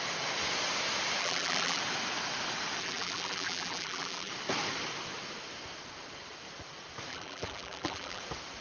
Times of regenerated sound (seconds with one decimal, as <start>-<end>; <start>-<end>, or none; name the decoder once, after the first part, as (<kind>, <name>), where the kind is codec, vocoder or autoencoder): 1.2-1.8 (vocoder, BigVGAN v2); 2.8-4.3; 7.1-8.2